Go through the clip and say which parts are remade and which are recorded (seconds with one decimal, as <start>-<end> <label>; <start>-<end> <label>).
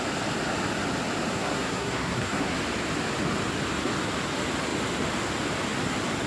0.0-1.3 recorded; 1.3-2.6 remade; 2.6-6.3 recorded